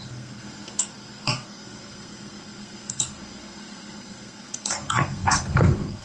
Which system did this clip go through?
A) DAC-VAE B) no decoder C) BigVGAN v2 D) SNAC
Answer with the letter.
D